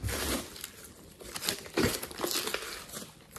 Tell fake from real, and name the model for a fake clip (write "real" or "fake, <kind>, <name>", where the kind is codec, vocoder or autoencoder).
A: real